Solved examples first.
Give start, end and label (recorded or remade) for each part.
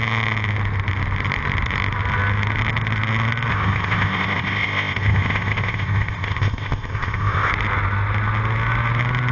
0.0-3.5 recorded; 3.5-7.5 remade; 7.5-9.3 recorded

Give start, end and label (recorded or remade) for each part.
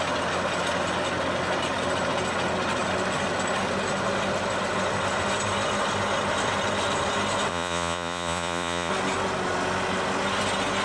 0.0-7.5 recorded; 7.5-8.9 remade; 8.9-10.8 recorded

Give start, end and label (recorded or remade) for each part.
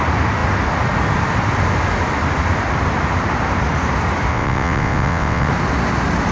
0.0-4.3 recorded; 4.3-5.5 remade; 5.5-6.3 recorded